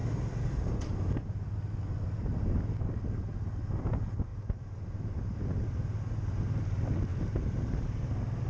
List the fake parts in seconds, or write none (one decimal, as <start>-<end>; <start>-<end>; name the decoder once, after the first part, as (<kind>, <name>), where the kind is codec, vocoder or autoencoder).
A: 0.0-1.7 (vocoder, BigVGAN v2); 4.3-5.4; 7.1-8.1